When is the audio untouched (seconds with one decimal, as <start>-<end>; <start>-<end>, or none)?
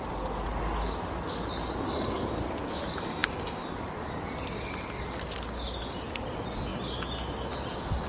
0.0-8.1